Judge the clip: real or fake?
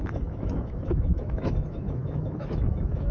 fake